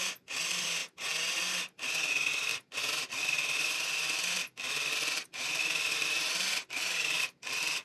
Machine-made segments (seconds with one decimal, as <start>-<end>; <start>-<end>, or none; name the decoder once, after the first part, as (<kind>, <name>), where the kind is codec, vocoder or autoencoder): 2.5-7.2 (vocoder, BigVGAN v2)